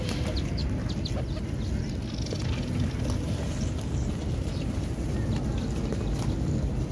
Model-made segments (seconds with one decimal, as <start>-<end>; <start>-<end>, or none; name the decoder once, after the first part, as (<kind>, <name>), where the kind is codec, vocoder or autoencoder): none

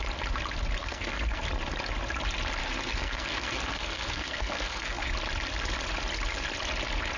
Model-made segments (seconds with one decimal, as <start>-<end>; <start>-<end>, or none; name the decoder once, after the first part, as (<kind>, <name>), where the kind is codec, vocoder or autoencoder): 0.8-1.4 (codec, SNAC); 2.6-5.1

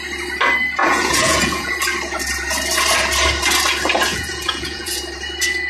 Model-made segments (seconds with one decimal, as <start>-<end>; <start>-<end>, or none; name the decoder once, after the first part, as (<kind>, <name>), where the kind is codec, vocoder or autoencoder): 0.8-1.7 (vocoder, Vocos); 4.1-5.0

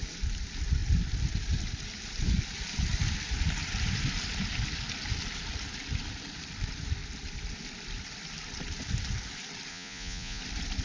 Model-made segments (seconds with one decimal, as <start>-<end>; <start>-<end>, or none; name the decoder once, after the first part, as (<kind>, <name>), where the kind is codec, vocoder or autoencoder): 9.7-10.4 (vocoder, Vocos)

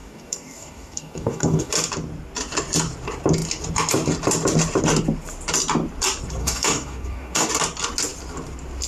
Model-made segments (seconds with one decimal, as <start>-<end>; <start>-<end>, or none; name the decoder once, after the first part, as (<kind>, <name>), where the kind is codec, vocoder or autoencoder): 0.0-1.7 (codec, DAC); 6.4-7.5